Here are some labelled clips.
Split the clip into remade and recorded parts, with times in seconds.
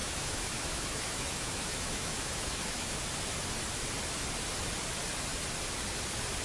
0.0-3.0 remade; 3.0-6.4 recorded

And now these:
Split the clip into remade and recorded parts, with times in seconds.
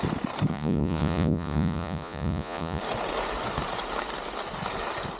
0.0-0.5 recorded; 0.5-2.8 remade; 2.8-5.2 recorded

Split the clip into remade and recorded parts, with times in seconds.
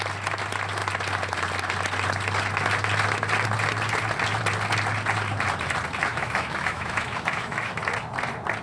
0.0-6.1 recorded; 6.1-7.7 remade; 7.7-8.6 recorded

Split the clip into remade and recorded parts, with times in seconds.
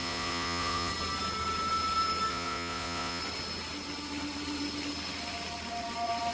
0.0-0.9 remade; 0.9-2.3 recorded; 2.3-3.2 remade; 3.2-6.3 recorded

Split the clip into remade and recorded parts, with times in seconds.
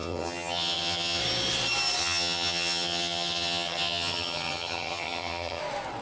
0.0-1.2 remade; 1.2-2.0 recorded; 2.0-5.6 remade; 5.6-6.0 recorded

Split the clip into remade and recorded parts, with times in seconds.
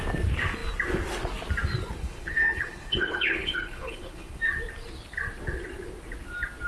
0.0-2.0 recorded; 2.0-4.4 remade; 4.4-6.7 recorded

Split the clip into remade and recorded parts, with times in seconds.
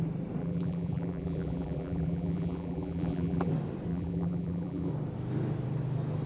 0.0-0.4 recorded; 0.4-3.5 remade; 3.5-3.9 recorded; 3.9-4.9 remade; 4.9-6.3 recorded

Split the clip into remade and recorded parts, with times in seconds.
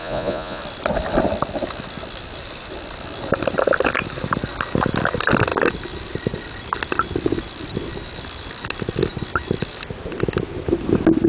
0.0-0.6 remade; 0.6-11.3 recorded